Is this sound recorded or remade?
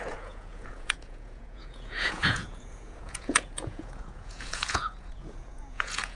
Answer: remade